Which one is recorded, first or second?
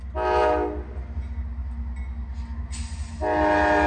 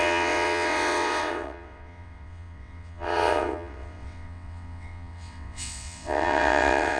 first